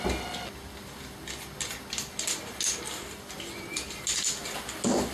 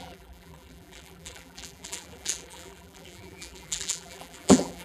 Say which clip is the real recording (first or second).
first